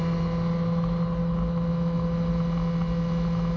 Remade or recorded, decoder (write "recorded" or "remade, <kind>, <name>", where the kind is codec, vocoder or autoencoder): recorded